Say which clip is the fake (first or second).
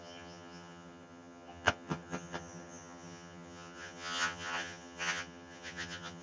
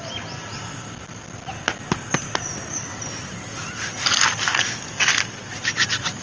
first